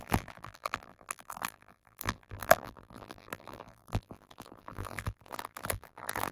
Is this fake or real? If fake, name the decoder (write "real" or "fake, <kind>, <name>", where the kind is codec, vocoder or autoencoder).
fake, vocoder, BigVGAN v2